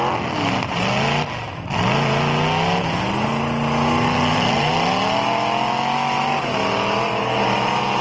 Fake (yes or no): no